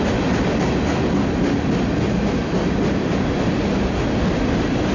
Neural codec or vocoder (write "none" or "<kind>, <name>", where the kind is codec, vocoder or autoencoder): none